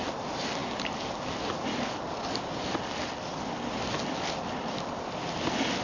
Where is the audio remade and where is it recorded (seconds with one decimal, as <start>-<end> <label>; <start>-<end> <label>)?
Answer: 0.0-5.8 recorded